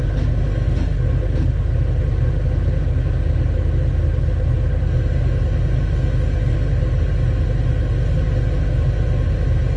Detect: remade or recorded recorded